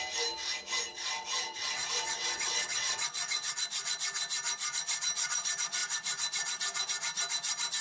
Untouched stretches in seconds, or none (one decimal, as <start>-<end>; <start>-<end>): 0.0-0.9; 3.5-7.8